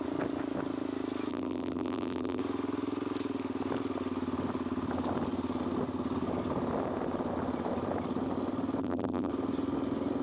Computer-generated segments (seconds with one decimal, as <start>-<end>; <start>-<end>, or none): 1.3-2.4; 8.8-9.3